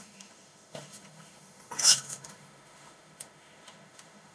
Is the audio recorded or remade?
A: remade